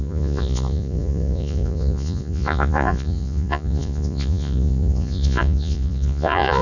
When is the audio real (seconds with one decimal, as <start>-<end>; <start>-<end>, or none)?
none